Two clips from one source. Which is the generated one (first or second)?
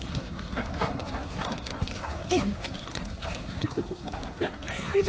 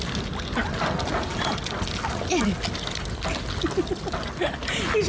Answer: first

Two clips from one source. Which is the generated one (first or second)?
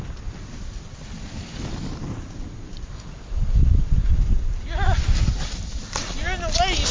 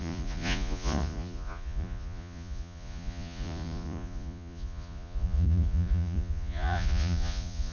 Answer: second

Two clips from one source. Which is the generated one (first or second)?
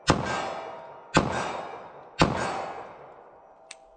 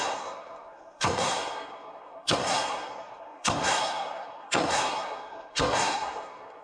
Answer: second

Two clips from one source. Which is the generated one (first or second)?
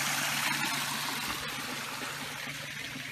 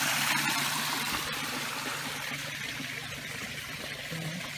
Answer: second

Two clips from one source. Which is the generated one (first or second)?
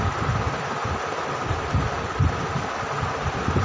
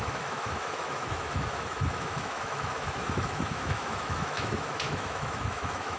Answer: second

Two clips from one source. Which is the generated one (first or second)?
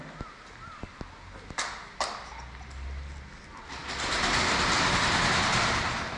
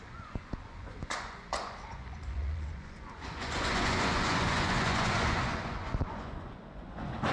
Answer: second